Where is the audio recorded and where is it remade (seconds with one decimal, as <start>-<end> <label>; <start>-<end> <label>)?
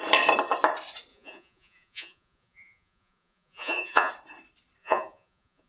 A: 0.0-1.1 recorded; 1.1-4.1 remade; 4.1-4.8 recorded; 4.8-5.7 remade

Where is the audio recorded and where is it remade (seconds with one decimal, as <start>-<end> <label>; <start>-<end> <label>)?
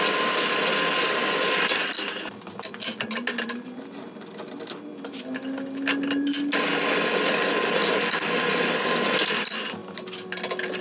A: 0.0-10.8 recorded